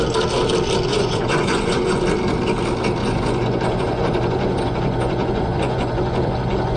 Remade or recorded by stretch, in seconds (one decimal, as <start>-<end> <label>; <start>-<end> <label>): 0.0-0.9 recorded; 0.9-2.0 remade; 2.0-3.0 recorded; 3.0-6.8 remade